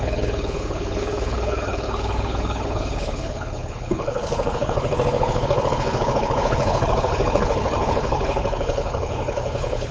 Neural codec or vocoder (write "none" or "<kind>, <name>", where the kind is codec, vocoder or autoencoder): codec, HILCodec